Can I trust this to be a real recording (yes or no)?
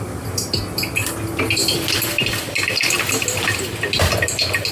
yes